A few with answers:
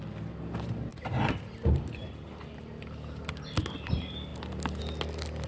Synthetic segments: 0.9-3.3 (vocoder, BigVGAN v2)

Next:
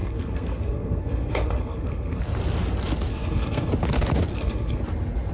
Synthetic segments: 0.0-2.2 (codec, SNAC); 3.1-3.7; 4.3-4.8

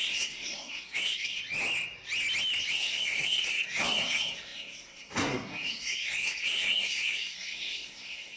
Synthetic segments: 0.0-1.4 (codec, SNAC); 2.7-8.4

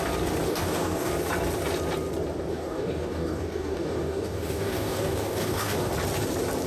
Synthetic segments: 0.5-1.1 (codec, DAC); 2.5-5.9

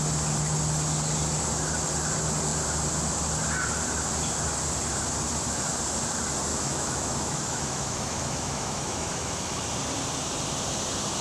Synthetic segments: 6.5-9.7 (autoencoder, DAC-VAE)